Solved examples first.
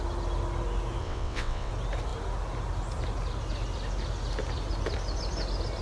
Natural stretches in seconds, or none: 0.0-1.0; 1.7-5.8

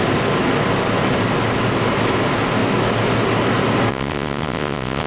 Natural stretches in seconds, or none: 0.0-3.9

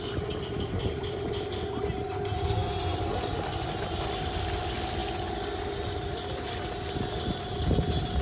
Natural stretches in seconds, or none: 0.0-8.2

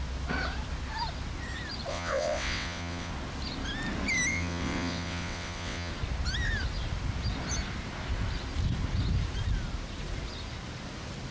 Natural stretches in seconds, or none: 0.0-1.9; 3.1-4.3; 5.9-11.3

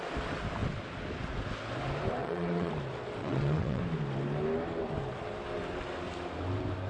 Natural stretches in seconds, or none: 0.0-2.2; 2.7-3.2; 3.8-6.9

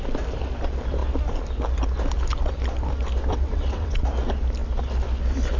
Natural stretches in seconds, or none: 0.0-3.3; 4.0-5.6

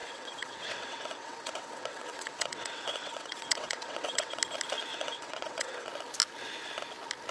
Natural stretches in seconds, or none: 4.4-4.9; 5.9-7.3

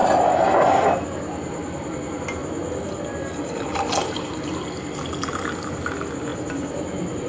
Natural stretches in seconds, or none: 0.0-7.3